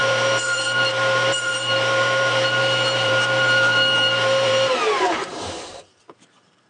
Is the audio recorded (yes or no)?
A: no